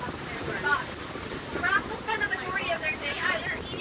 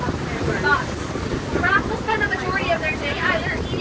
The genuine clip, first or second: second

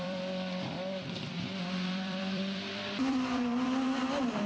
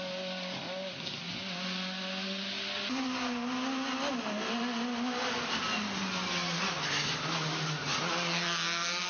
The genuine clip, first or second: second